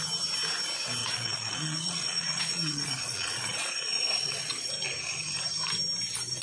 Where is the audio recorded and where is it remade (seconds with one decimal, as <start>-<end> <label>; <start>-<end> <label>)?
0.0-1.0 recorded; 1.0-4.7 remade; 4.7-6.4 recorded